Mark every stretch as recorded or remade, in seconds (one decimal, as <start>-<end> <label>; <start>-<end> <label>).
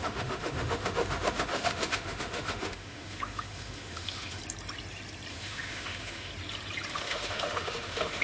0.0-4.4 remade; 4.4-5.3 recorded; 5.3-6.3 remade; 6.3-6.9 recorded; 6.9-8.2 remade